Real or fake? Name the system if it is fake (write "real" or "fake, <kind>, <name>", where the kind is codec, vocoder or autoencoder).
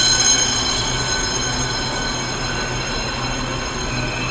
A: real